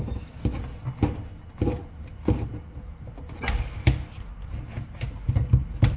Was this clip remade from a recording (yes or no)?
no